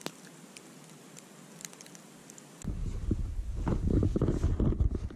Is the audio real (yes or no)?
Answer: yes